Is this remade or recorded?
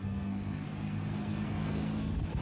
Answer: remade